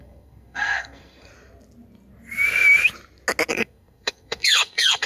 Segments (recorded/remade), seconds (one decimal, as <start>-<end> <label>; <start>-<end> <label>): 0.0-1.3 remade; 1.3-3.5 recorded; 3.5-5.1 remade